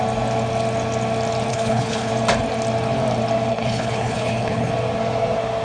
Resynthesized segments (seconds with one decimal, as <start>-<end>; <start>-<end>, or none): 1.5-2.1; 3.5-4.7